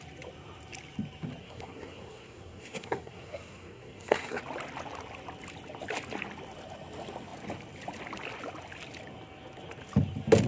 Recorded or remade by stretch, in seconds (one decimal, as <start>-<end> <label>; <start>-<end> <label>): 0.0-1.4 recorded; 1.4-4.4 remade; 4.4-10.5 recorded